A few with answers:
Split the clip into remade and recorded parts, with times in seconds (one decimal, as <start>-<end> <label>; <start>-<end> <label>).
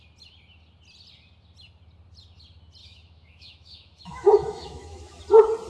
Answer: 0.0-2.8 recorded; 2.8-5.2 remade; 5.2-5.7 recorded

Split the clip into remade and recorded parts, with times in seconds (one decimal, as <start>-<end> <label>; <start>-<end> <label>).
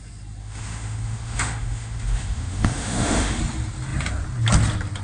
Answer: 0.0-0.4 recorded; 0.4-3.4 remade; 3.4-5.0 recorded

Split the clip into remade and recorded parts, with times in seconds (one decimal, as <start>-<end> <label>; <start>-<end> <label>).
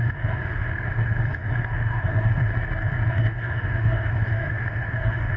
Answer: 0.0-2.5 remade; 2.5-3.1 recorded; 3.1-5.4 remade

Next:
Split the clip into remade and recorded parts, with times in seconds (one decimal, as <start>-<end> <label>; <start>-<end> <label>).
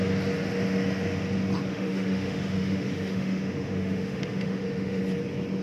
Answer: 0.0-1.7 recorded; 1.7-5.0 remade; 5.0-5.6 recorded